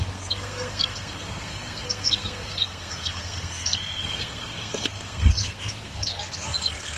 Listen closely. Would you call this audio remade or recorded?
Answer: remade